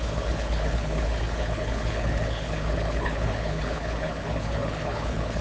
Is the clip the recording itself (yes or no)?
no